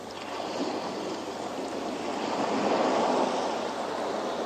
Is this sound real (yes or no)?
yes